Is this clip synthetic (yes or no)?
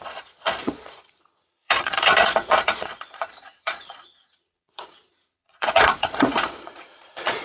yes